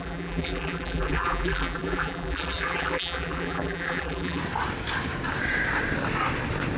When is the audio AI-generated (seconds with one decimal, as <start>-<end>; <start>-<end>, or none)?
0.0-4.4